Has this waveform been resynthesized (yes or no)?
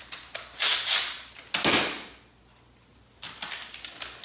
no